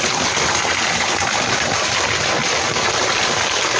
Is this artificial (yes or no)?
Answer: no